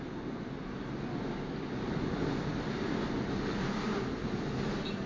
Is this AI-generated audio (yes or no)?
no